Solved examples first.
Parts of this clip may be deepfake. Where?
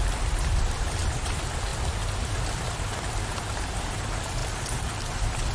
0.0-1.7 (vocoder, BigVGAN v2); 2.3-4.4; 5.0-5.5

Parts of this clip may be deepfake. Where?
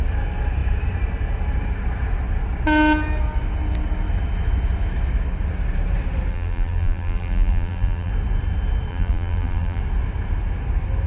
6.3-8.1 (vocoder, BigVGAN v2); 8.9-9.8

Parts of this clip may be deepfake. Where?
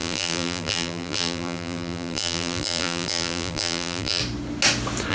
0.0-4.2 (vocoder, BigVGAN v2)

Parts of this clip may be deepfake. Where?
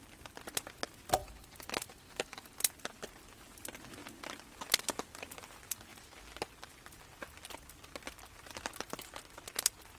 1.2-2.7 (vocoder, BigVGAN v2)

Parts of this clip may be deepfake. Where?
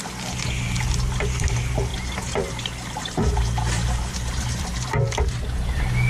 1.9-4.6 (vocoder, BigVGAN v2)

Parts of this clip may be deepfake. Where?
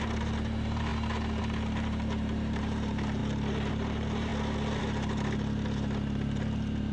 0.0-0.9 (vocoder, BigVGAN v2); 1.4-3.2; 3.7-4.3; 4.8-6.9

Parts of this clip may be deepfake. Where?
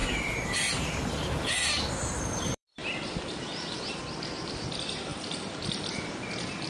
0.0-4.0 (vocoder, BigVGAN v2); 5.1-6.1